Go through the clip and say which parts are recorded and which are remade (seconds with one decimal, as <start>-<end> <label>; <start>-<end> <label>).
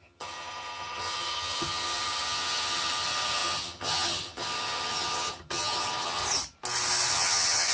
0.0-6.2 remade; 6.2-7.1 recorded; 7.1-7.7 remade